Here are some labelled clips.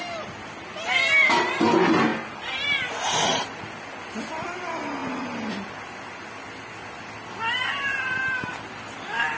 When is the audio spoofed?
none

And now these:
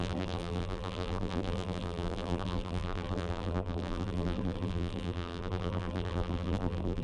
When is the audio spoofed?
0.0-7.0 (vocoder, BigVGAN v2)

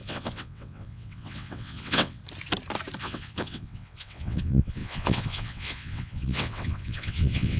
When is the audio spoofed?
0.0-2.2 (vocoder, WaveNeXt); 3.0-7.6

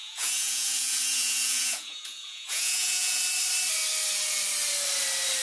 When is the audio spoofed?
0.0-3.2 (vocoder, Vocos)

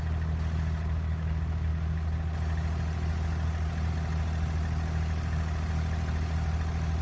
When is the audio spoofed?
none

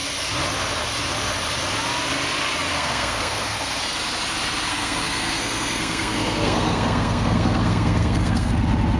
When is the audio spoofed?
2.7-3.8 (codec, SNAC); 4.7-8.5

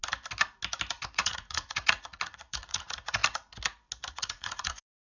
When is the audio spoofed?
1.1-3.2 (vocoder, Vocos); 4.1-5.1

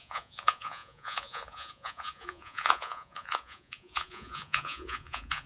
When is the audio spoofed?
0.0-5.5 (vocoder, Vocos)